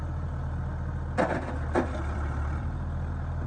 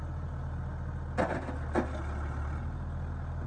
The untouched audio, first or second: second